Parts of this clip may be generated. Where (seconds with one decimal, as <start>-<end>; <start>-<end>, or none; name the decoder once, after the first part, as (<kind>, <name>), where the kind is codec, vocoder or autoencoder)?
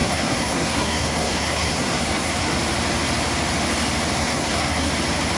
0.0-2.5 (codec, SNAC); 4.2-4.9